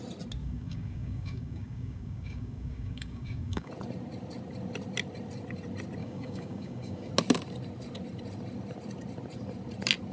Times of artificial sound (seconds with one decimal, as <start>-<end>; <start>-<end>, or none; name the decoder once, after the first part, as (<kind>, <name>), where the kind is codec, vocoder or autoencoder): 0.4-3.7 (codec, DAC); 6.0-7.1